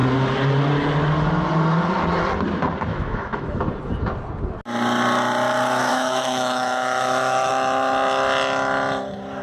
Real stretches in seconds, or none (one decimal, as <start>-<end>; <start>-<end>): 0.0-2.9; 3.6-5.9; 7.5-9.4